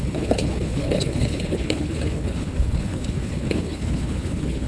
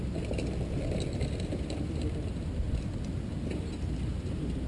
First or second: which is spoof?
first